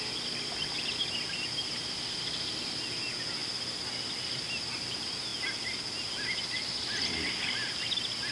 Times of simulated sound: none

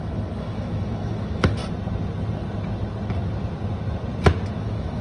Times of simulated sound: 0.0-1.6 (autoencoder, DAC-VAE); 4.6-5.0